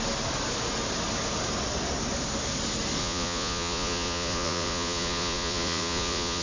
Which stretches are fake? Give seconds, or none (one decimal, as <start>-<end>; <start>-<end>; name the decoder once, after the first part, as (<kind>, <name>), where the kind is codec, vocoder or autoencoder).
3.0-6.4 (vocoder, Vocos)